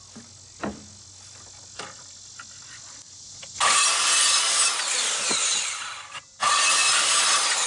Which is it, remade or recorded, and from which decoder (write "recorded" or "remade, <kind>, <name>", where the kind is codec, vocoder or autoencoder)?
recorded